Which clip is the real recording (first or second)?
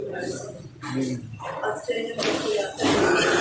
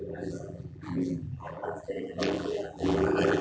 first